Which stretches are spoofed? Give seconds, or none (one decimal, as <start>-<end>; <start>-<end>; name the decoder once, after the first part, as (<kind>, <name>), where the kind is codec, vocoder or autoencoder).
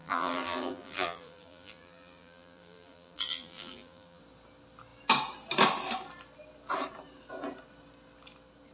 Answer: 0.0-4.2 (vocoder, BigVGAN v2)